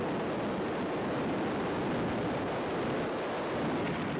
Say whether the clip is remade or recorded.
recorded